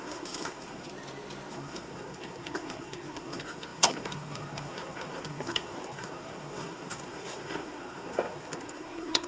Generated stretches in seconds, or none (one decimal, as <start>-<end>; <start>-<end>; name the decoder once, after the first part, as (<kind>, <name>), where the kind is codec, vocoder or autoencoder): 0.0-0.9 (codec, SNAC); 1.5-9.3